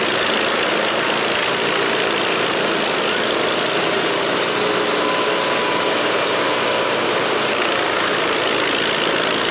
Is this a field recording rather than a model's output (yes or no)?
yes